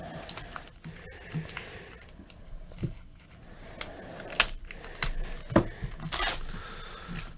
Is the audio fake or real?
real